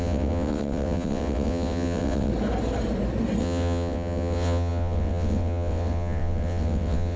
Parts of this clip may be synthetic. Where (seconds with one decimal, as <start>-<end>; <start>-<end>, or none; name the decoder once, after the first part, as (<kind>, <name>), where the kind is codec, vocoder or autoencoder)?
0.0-2.3 (vocoder, WaveNeXt); 3.4-7.2